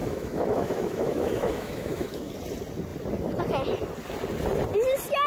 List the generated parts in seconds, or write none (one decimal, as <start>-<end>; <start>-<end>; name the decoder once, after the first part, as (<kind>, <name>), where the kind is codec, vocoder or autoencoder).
0.0-2.3 (autoencoder, DAC-VAE)